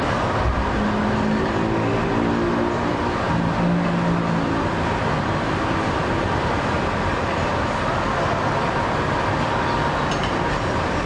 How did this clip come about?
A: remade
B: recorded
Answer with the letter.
B